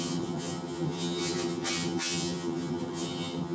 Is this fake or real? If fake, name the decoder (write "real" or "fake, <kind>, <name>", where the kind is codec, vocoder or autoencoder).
fake, vocoder, HiFi-GAN